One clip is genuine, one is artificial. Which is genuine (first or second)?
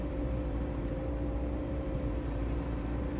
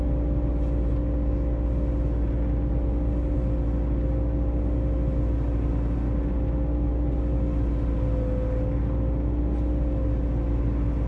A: second